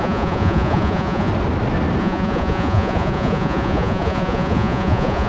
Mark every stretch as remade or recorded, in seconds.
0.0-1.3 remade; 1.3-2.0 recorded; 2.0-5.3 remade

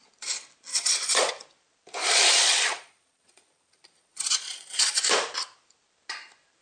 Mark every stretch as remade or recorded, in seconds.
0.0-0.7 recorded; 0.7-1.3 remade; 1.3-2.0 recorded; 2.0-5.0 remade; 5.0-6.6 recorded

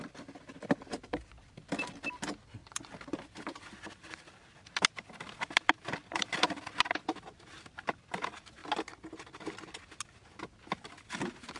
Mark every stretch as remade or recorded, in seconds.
0.0-11.6 recorded

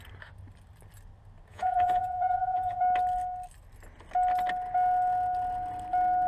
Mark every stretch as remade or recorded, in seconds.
0.0-1.5 recorded; 1.5-2.8 remade; 2.8-6.3 recorded